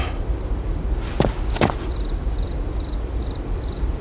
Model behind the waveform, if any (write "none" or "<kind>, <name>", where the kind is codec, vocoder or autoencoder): vocoder, BigVGAN v2